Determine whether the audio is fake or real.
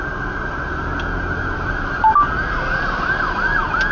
real